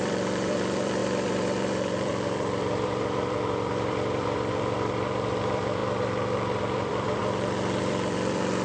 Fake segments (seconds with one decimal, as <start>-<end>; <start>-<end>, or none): 0.0-5.8; 6.6-7.2; 7.8-8.6